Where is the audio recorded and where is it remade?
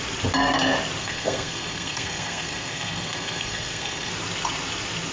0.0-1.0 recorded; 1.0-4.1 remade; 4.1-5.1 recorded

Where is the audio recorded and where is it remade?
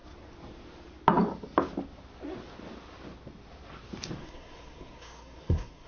0.0-4.2 recorded; 4.2-5.9 remade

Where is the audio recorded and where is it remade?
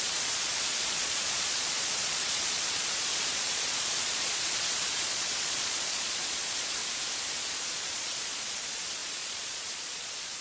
0.0-6.8 remade; 6.8-7.4 recorded; 7.4-10.4 remade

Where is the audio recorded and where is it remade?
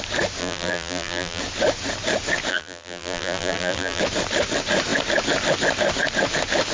0.0-0.4 recorded; 0.4-1.4 remade; 1.4-2.5 recorded; 2.5-4.0 remade; 4.0-6.7 recorded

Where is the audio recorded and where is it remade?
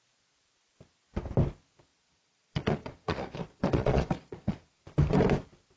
0.0-1.9 recorded; 1.9-4.8 remade; 4.8-5.8 recorded